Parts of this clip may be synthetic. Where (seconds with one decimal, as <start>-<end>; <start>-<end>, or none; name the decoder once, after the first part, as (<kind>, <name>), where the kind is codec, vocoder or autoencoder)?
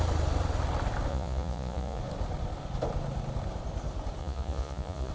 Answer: 1.1-2.0 (vocoder, Vocos); 4.2-5.1